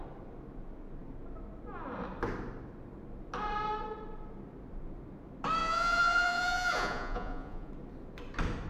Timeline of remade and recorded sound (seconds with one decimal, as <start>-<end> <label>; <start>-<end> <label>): 0.0-5.6 recorded; 5.6-7.7 remade; 7.7-8.7 recorded